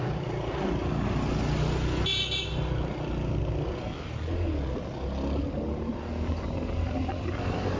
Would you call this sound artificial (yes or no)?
no